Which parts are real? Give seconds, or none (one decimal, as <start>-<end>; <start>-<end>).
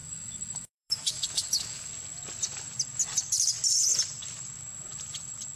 1.9-5.6